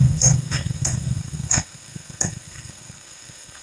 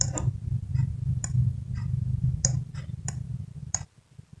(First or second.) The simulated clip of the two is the first